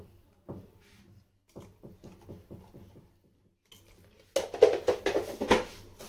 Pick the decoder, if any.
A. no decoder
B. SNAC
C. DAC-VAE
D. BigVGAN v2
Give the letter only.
A